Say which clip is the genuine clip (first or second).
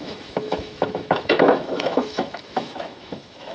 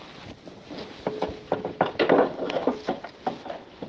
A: second